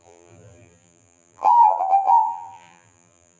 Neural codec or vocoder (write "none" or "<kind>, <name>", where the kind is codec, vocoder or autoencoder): vocoder, BigVGAN v2